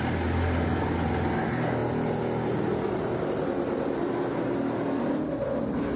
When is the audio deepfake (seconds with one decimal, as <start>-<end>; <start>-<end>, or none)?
none